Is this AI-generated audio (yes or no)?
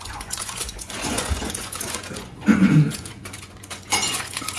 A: yes